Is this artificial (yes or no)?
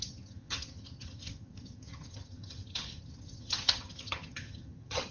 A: yes